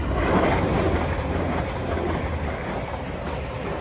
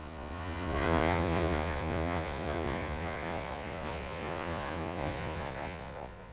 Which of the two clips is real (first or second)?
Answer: first